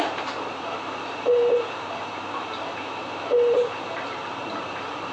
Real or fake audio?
fake